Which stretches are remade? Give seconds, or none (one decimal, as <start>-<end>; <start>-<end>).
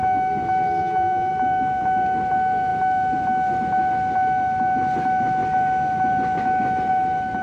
0.8-1.3